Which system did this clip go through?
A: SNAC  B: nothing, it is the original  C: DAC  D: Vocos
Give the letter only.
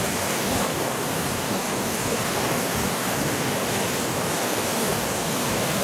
C